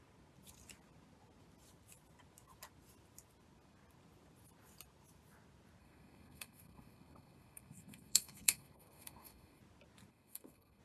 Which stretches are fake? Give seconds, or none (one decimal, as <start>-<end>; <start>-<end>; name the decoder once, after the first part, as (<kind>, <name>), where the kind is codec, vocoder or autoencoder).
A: 5.8-9.6 (codec, SNAC); 10.1-10.8